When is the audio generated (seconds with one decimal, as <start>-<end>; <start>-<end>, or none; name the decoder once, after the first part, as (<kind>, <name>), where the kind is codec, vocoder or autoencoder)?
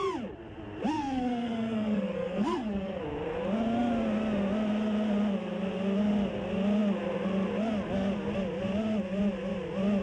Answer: 0.9-3.0 (codec, SNAC)